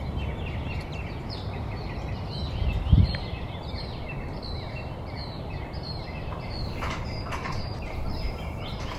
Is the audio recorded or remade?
remade